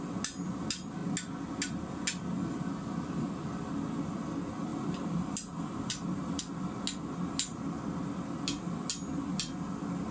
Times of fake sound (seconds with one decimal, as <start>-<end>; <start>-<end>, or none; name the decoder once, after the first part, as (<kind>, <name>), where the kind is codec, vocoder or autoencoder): 4.7-6.4 (vocoder, BigVGAN v2)